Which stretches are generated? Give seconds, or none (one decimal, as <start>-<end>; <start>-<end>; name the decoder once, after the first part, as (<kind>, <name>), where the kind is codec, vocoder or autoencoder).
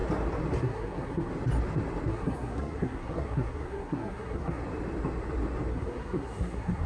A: 0.6-1.3 (codec, SNAC); 2.1-4.6; 5.7-6.9